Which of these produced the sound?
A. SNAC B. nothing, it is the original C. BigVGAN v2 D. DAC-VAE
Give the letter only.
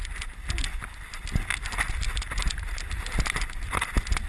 B